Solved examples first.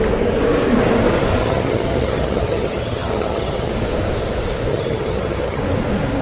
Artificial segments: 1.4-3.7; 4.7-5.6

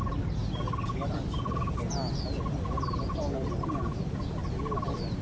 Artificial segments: none

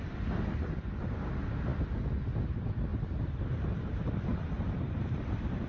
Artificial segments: 2.9-3.5; 4.3-5.7

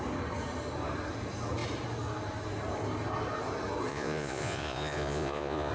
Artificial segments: 3.9-5.7

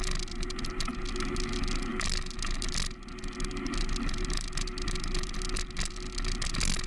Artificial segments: none

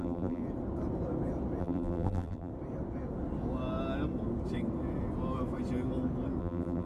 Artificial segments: 0.0-0.4; 1.6-2.5; 6.4-6.9

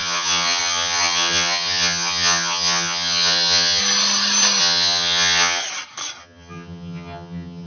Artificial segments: 0.0-3.8; 4.6-5.6; 6.2-7.7

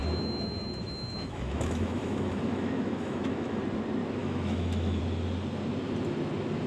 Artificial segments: 0.0-3.6; 4.2-5.0